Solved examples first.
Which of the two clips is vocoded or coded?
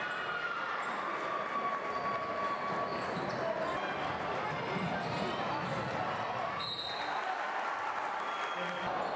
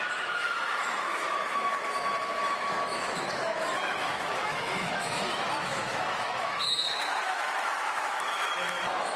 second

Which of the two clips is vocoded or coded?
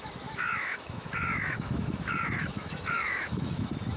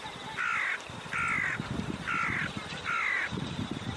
first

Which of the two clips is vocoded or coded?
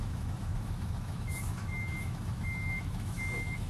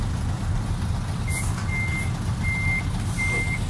first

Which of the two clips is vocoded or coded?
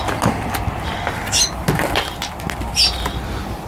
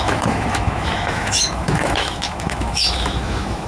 second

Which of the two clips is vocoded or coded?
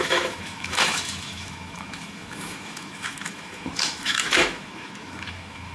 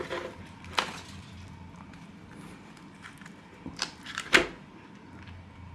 first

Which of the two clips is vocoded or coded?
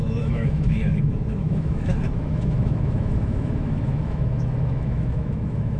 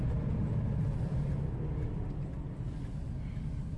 first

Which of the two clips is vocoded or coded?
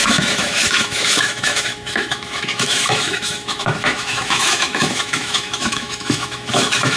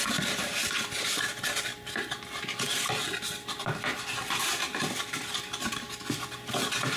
first